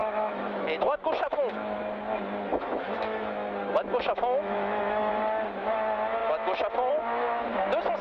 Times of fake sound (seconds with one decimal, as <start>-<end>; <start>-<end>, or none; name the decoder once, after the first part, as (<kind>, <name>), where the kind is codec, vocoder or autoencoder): 0.0-1.8 (autoencoder, DAC-VAE); 2.5-5.1